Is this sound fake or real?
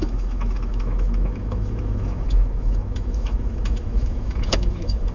fake